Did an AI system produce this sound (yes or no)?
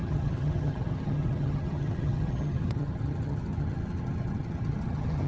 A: yes